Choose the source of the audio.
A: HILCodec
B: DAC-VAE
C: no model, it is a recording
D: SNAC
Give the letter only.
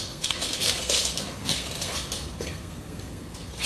D